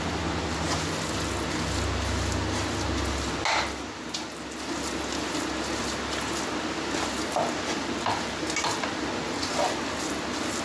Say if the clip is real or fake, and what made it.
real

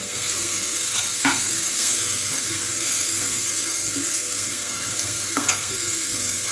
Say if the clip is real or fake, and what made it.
fake, codec, SNAC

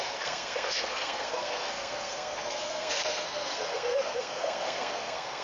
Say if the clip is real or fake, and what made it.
fake, codec, SNAC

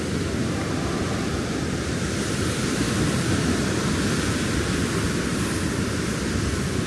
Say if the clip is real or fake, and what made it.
real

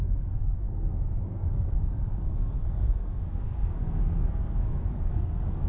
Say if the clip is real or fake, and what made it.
fake, codec, SNAC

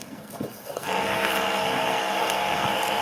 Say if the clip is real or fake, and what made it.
fake, codec, SNAC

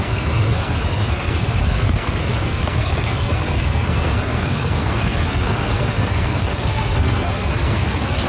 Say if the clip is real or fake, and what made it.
fake, codec, SNAC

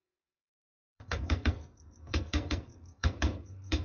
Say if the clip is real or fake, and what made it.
fake, codec, SNAC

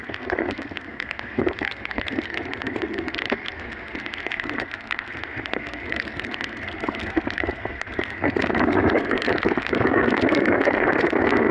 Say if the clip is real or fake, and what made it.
fake, codec, SNAC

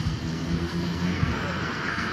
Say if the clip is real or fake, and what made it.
fake, codec, SNAC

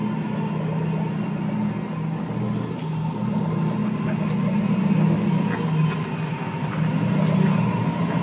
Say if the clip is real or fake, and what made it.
real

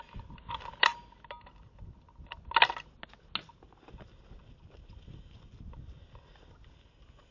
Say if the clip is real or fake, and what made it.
real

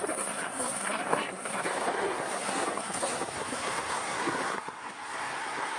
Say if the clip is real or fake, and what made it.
fake, codec, SNAC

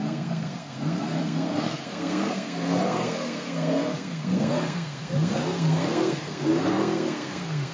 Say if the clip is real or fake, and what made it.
fake, codec, SNAC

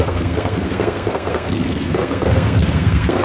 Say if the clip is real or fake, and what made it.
fake, codec, SNAC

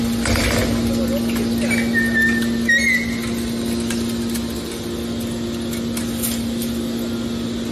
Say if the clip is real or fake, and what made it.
real